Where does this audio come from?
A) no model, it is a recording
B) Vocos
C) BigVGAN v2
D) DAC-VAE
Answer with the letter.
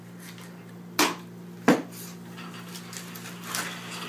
A